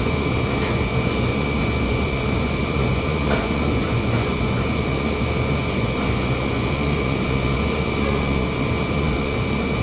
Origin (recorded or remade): remade